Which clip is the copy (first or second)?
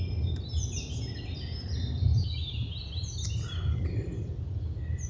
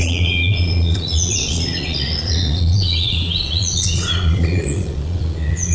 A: second